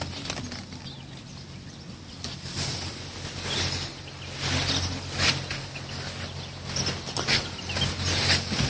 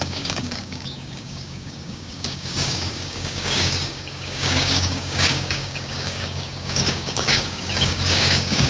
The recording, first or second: first